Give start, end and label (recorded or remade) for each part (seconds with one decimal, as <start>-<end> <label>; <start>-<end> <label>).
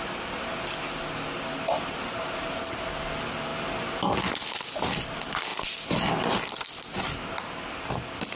0.0-8.4 recorded